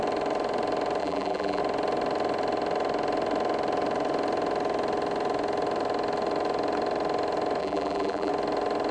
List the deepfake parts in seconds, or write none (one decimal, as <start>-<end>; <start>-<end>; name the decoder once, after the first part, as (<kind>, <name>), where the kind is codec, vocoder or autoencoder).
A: 1.0-1.6 (vocoder, BigVGAN v2); 7.6-8.3